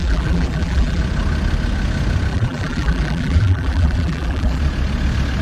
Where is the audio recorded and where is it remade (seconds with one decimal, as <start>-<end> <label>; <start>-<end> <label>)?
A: 0.0-1.0 remade; 1.0-2.3 recorded; 2.3-4.6 remade; 4.6-5.4 recorded